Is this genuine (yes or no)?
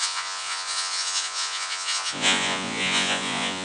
no